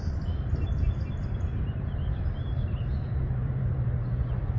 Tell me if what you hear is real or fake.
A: fake